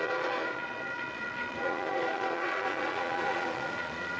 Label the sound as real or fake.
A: fake